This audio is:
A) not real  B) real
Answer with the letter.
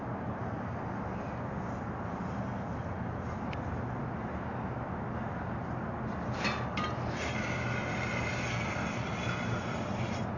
B